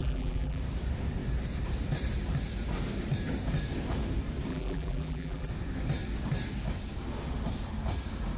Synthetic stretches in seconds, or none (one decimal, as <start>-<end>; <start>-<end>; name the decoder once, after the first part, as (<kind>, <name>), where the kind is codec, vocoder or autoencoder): 0.0-0.6 (vocoder, BigVGAN v2); 4.5-5.5